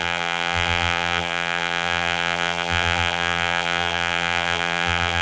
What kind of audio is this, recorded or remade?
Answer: remade